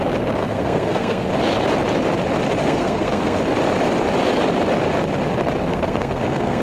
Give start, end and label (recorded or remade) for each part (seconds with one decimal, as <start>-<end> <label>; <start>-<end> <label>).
0.0-0.4 recorded; 0.4-1.3 remade; 1.3-2.6 recorded; 2.6-3.4 remade; 3.4-5.7 recorded; 5.7-6.6 remade